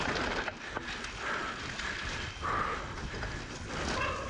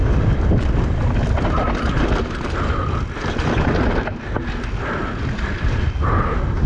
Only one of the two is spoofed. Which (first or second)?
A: first